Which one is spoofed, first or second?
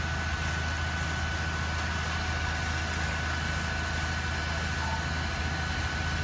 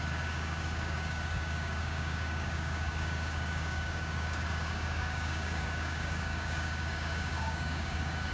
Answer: second